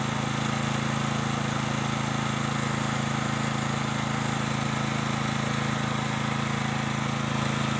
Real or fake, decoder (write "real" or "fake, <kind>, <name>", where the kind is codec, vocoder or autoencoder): real